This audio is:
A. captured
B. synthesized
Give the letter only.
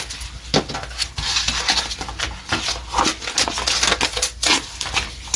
A